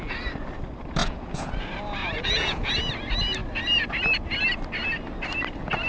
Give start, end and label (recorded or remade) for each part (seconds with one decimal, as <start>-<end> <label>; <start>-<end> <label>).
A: 0.0-1.0 recorded; 1.0-1.5 remade; 1.5-2.0 recorded; 2.0-2.7 remade; 2.7-5.9 recorded